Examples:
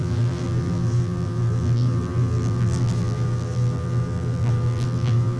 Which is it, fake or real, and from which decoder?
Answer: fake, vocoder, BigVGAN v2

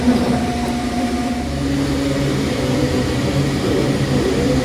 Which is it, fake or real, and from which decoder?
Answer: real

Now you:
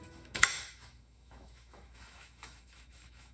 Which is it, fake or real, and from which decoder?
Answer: fake, autoencoder, DAC-VAE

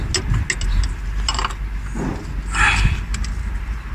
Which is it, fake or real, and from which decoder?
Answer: real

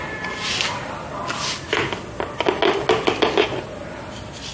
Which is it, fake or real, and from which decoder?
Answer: real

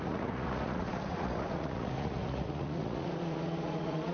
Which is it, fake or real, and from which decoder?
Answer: fake, vocoder, Vocos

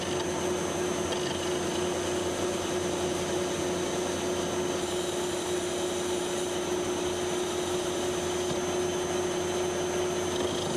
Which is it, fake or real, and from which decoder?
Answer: real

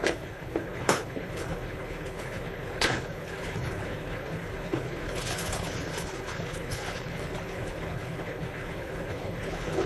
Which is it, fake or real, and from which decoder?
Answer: fake, codec, HILCodec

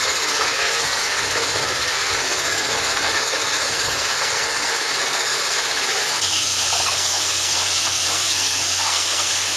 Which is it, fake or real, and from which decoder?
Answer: fake, codec, SNAC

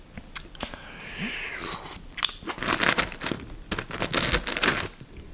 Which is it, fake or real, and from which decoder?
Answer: real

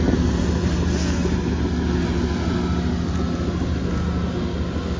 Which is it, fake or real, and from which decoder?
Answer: real